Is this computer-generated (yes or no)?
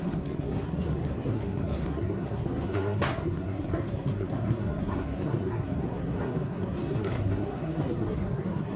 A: yes